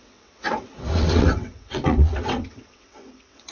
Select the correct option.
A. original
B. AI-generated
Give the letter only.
B